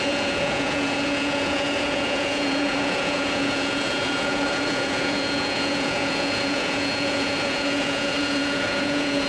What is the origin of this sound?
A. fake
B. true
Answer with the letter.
A